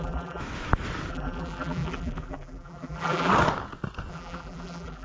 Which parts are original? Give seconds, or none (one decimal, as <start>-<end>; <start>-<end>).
0.4-1.1; 3.3-4.1